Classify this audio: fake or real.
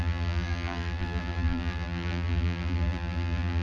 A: fake